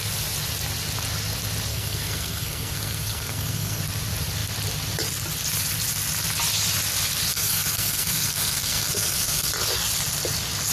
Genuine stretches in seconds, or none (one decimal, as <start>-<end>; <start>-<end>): 0.0-1.7; 3.8-7.3; 9.5-10.7